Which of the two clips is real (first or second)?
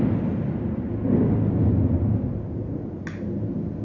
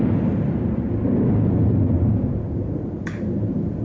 first